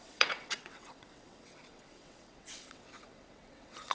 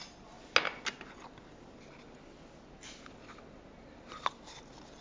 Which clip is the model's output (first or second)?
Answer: first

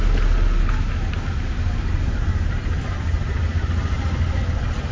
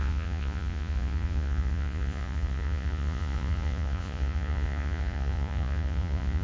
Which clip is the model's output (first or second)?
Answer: second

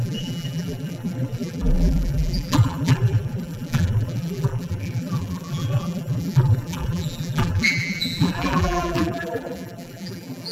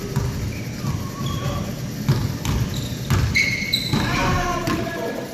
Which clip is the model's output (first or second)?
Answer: first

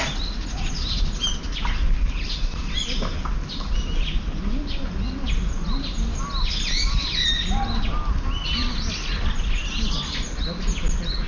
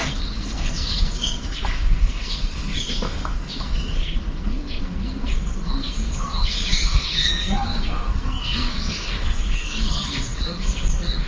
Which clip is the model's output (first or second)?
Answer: second